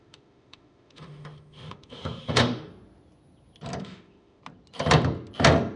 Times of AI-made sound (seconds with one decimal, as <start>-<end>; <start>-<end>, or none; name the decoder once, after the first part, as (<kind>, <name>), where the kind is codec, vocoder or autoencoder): 0.0-2.7 (autoencoder, DAC-VAE); 3.8-4.4